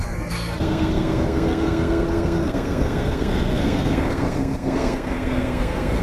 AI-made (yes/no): yes